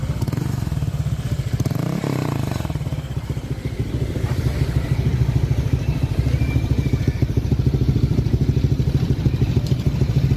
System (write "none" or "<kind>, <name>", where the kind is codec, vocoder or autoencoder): vocoder, BigVGAN v2